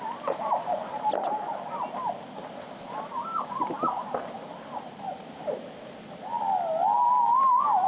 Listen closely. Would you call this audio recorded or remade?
recorded